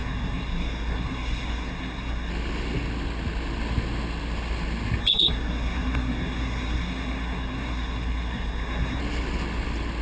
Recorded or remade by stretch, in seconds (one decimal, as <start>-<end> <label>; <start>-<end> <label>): 0.0-2.3 remade; 2.3-5.0 recorded; 5.0-9.0 remade; 9.0-10.0 recorded